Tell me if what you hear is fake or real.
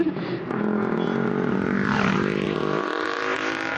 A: real